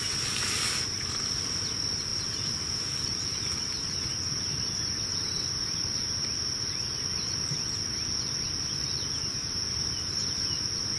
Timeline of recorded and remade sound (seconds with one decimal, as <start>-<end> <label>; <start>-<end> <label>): 0.0-11.0 recorded

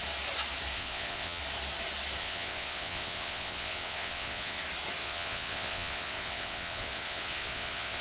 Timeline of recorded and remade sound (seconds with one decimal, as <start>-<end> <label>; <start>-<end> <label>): 0.0-0.7 recorded; 0.7-1.4 remade; 1.4-2.2 recorded; 2.2-4.6 remade; 4.6-5.0 recorded; 5.0-8.0 remade